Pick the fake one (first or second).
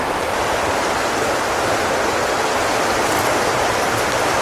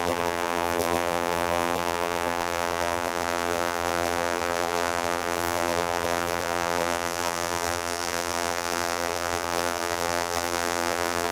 second